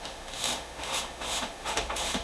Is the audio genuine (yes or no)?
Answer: no